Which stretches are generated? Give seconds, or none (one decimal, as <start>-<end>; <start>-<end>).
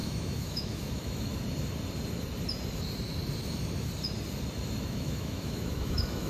0.0-1.3; 4.8-6.3